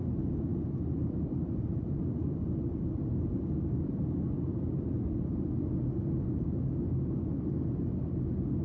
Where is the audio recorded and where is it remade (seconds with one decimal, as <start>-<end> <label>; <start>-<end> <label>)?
0.0-0.5 recorded; 0.5-5.6 remade; 5.6-8.6 recorded